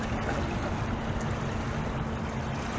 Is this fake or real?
real